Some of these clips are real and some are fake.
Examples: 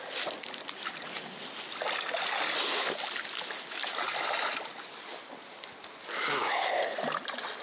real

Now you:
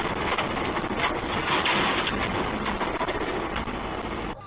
real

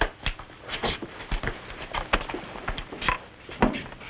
real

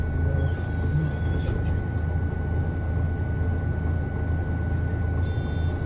real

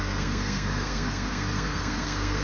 fake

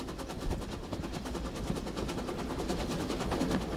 real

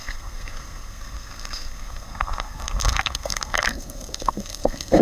fake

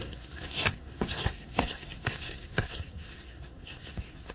fake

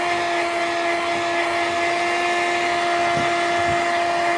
real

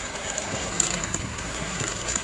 fake